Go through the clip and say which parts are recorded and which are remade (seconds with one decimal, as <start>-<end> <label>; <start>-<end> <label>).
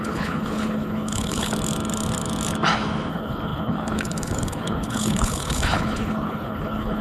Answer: 0.0-1.5 remade; 1.5-3.1 recorded; 3.1-7.0 remade